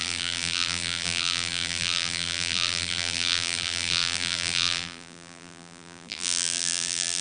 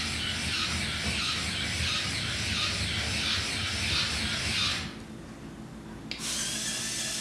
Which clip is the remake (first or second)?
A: first